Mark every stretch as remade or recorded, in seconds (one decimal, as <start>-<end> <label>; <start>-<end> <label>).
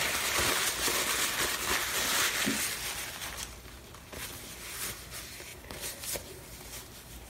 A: 0.0-7.3 recorded